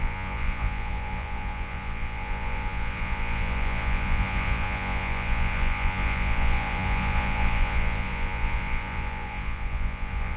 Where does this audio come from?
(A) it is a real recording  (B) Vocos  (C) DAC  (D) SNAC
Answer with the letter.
B